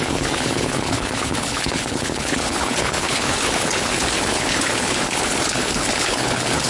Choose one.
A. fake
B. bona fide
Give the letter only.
A